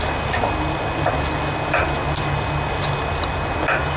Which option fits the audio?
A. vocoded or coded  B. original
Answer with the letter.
B